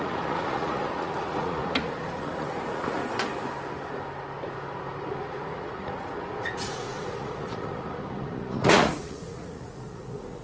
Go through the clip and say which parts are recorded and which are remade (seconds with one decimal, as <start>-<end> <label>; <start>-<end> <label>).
0.0-3.0 remade; 3.0-5.1 recorded; 5.1-10.4 remade